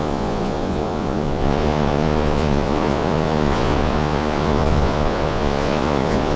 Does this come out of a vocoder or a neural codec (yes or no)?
yes